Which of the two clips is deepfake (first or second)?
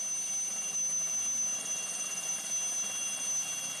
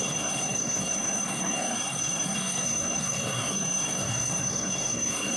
second